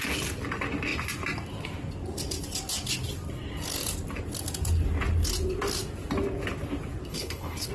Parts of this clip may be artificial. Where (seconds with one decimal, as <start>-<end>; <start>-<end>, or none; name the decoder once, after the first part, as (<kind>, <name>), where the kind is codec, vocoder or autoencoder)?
7.1-7.7 (codec, HILCodec)